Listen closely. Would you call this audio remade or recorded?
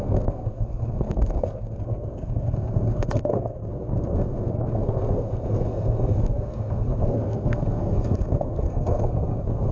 remade